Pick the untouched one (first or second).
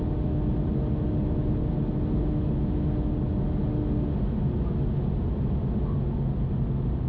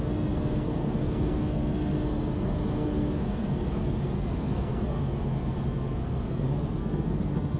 first